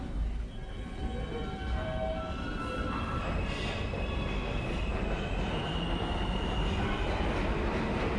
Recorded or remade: recorded